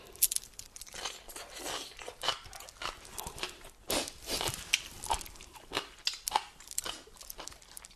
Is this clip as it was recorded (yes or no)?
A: yes